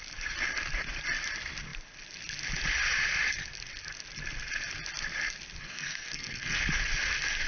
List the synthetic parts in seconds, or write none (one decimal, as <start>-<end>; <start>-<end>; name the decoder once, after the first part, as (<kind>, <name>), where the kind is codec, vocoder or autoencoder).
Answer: 5.6-6.6 (codec, SNAC)